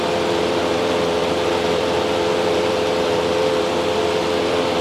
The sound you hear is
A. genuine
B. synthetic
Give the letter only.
B